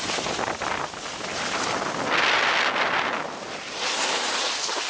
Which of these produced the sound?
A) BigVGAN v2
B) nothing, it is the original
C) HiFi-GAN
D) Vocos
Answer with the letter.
B